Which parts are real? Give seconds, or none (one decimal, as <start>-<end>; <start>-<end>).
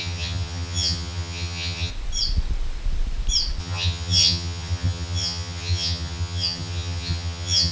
1.9-3.6